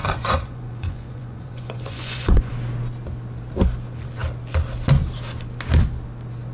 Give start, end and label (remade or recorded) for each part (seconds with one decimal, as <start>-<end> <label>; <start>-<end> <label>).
0.0-2.5 remade; 2.5-6.5 recorded

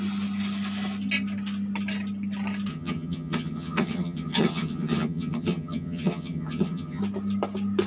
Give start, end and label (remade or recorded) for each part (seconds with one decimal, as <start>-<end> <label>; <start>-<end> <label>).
0.0-2.7 recorded; 2.7-7.0 remade; 7.0-7.9 recorded

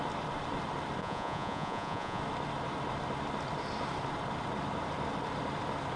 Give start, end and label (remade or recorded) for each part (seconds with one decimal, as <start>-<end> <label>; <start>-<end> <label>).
0.0-1.0 recorded; 1.0-2.2 remade; 2.2-6.0 recorded

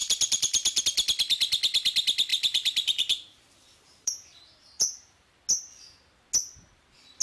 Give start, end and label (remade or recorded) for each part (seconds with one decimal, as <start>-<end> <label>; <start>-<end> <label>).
0.0-0.8 remade; 0.8-2.3 recorded; 2.3-5.3 remade; 5.3-7.2 recorded

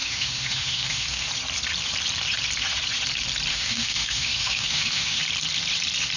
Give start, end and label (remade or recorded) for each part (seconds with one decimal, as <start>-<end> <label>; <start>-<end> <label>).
0.0-1.3 remade; 1.3-3.5 recorded; 3.5-5.2 remade; 5.2-6.2 recorded

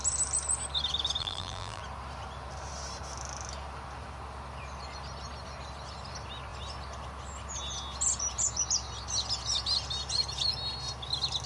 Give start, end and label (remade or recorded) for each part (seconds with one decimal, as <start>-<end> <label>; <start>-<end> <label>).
0.0-1.2 recorded; 1.2-1.8 remade; 1.8-11.5 recorded

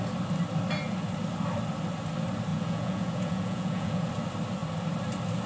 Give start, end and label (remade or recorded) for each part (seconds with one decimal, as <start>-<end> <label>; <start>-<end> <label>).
0.0-2.5 recorded; 2.5-4.1 remade; 4.1-5.5 recorded